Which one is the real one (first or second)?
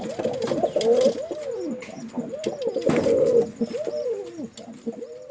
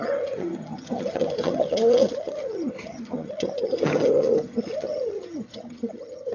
first